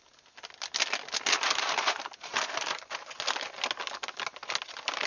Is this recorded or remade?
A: recorded